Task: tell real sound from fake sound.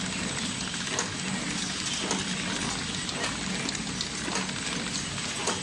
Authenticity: real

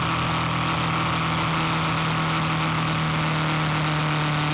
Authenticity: real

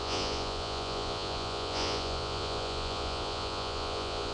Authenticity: fake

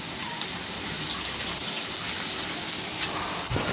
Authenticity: real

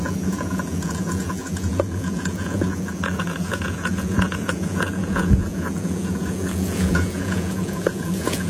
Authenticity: fake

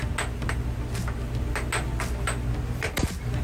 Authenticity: real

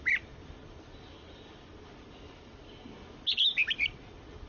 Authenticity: real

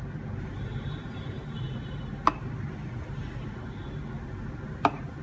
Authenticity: real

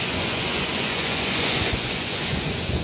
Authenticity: fake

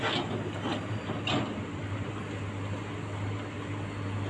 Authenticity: real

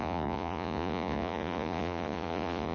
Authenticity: fake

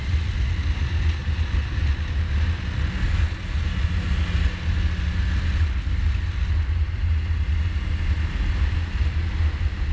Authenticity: real